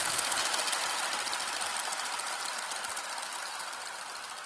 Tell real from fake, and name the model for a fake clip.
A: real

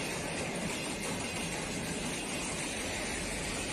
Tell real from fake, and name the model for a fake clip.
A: real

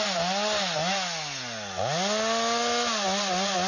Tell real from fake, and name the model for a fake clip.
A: real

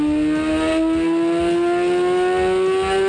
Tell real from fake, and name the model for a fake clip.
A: real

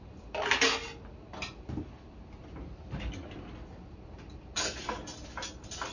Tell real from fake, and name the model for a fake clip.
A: real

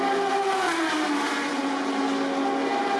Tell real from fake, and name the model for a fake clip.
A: real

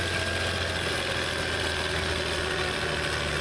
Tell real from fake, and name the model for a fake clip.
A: real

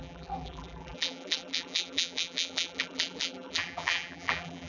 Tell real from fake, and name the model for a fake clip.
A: fake, vocoder, BigVGAN v2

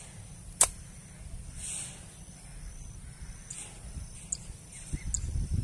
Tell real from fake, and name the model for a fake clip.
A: real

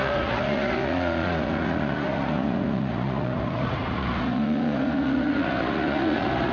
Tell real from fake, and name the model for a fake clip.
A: fake, vocoder, Vocos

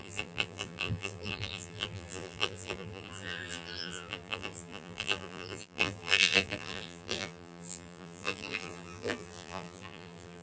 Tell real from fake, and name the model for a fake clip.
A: fake, vocoder, BigVGAN v2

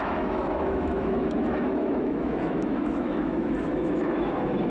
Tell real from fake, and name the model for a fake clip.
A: fake, autoencoder, DAC-VAE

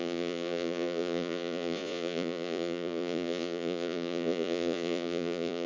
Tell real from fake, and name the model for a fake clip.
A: fake, vocoder, Vocos